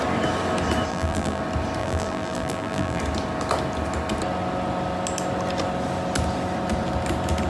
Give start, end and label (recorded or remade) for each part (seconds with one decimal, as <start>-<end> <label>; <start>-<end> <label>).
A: 0.0-0.9 recorded; 0.9-1.4 remade; 1.4-1.8 recorded; 1.8-3.0 remade; 3.0-7.5 recorded